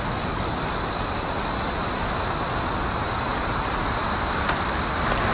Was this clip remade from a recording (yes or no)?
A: no